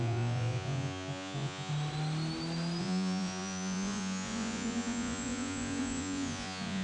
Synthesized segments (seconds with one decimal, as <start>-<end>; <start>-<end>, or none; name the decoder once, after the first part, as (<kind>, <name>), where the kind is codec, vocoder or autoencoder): 0.0-1.7 (vocoder, Vocos); 2.8-6.8